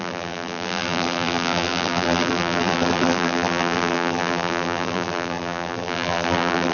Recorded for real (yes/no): no